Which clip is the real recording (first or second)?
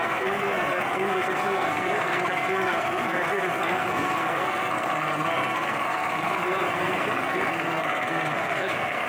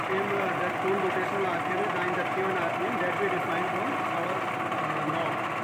second